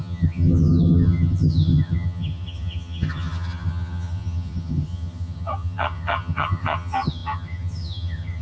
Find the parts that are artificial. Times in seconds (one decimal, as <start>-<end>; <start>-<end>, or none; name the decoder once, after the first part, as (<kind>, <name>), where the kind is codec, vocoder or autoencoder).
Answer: 0.0-8.4 (vocoder, HiFi-GAN)